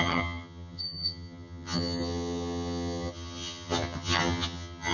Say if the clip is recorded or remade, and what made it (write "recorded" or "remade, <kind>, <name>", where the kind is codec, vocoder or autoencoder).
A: remade, vocoder, HiFi-GAN